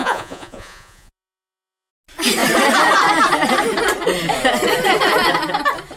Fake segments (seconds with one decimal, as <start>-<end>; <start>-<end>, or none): 0.0-1.9